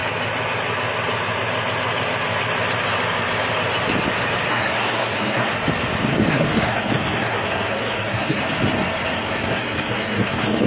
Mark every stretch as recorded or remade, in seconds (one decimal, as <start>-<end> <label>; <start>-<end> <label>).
0.0-4.5 recorded; 4.5-5.5 remade; 5.5-6.3 recorded; 6.3-8.4 remade; 8.4-9.2 recorded; 9.2-10.7 remade